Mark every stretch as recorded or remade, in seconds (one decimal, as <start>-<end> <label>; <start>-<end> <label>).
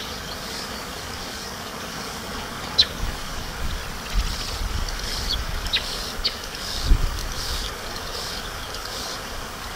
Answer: 0.0-3.8 remade; 3.8-4.7 recorded; 4.7-9.8 remade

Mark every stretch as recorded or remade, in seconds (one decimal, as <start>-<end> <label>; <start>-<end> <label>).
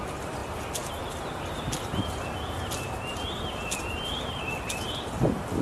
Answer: 0.0-5.6 recorded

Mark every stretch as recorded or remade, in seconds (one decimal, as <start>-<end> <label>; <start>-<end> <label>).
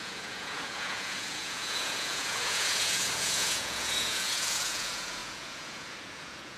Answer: 0.0-6.6 remade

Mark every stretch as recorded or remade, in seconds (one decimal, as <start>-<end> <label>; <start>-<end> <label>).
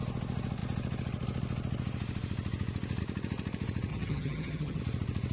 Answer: 0.0-3.9 recorded; 3.9-4.8 remade; 4.8-5.3 recorded